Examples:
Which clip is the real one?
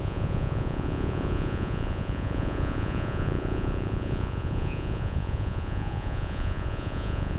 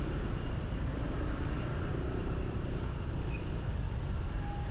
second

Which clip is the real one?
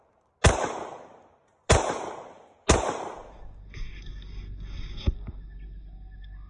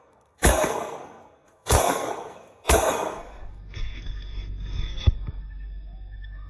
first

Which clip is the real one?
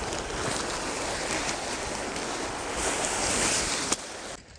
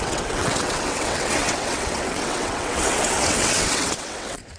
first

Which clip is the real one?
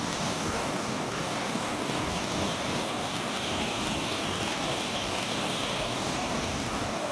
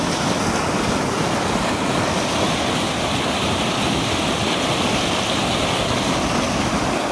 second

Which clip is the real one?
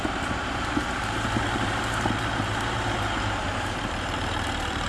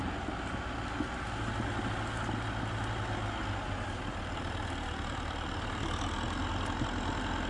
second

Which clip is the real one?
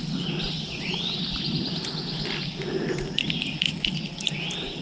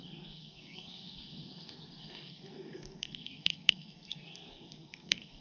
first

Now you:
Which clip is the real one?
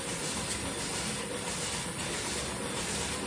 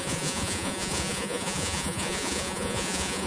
first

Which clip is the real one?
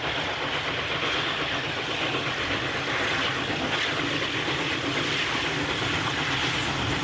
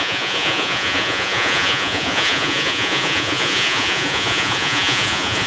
first